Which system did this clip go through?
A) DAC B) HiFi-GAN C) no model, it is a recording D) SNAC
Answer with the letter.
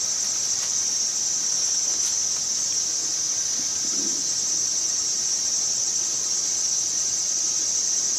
C